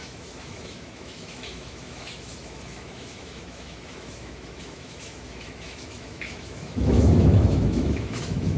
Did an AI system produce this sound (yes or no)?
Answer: yes